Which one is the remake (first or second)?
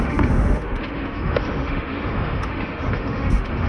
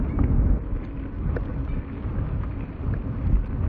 first